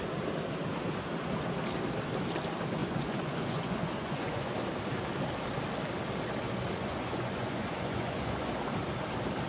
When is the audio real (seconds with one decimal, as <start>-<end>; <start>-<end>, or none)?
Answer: 0.0-2.8; 4.5-6.8; 8.5-9.5